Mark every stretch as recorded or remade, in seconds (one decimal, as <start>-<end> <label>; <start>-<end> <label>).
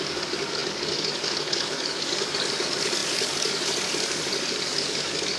0.0-5.4 remade